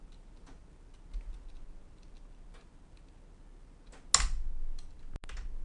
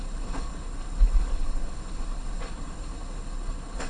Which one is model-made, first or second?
second